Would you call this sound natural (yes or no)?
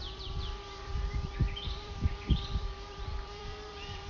no